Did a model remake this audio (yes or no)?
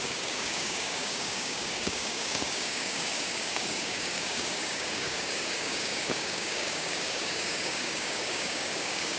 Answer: yes